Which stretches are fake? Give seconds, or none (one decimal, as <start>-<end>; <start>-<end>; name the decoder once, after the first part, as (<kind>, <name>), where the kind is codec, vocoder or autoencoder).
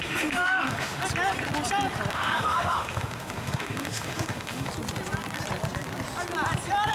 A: 0.0-1.0 (autoencoder, DAC-VAE); 2.1-4.7